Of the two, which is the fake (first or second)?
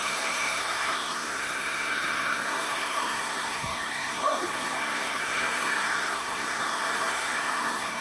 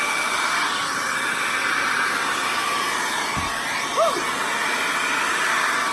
first